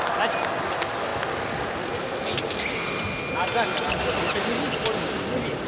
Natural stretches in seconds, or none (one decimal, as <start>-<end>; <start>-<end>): 0.0-5.7